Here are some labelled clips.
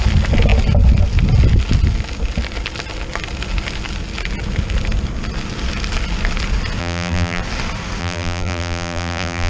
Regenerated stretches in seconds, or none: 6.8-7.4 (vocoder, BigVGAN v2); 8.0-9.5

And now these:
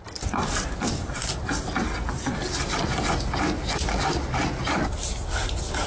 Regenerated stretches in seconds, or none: none

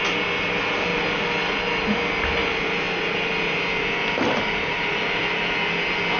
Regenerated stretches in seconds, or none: none

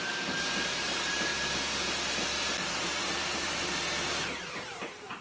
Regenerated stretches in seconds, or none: 0.0-1.3 (vocoder, BigVGAN v2); 3.0-3.7; 4.4-5.2

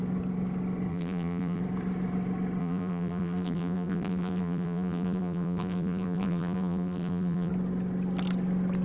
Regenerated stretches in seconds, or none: 0.9-1.6 (vocoder, BigVGAN v2); 2.6-7.5

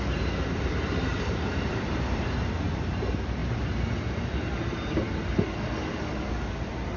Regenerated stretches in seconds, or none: 0.0-3.4 (vocoder, BigVGAN v2); 5.9-7.0

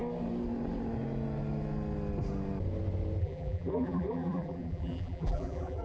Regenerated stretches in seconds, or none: 3.2-5.8 (vocoder, BigVGAN v2)

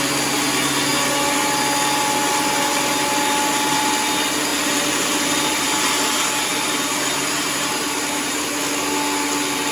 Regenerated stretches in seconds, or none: 4.5-6.0 (vocoder, BigVGAN v2); 6.5-8.5